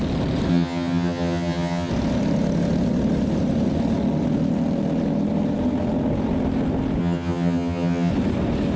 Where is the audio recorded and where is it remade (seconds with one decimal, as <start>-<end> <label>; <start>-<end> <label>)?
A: 0.0-0.5 recorded; 0.5-1.9 remade; 1.9-7.0 recorded; 7.0-8.1 remade; 8.1-8.8 recorded